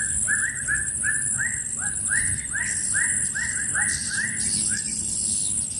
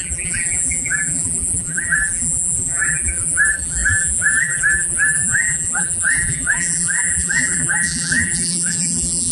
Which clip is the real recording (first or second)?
first